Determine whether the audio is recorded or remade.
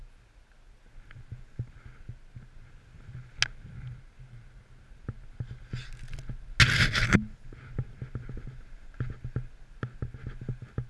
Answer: recorded